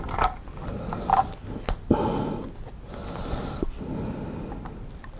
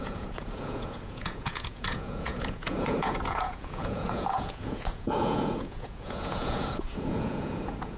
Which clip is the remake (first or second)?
second